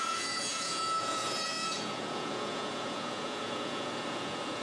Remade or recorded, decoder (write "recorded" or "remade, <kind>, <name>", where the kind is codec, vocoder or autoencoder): remade, vocoder, Vocos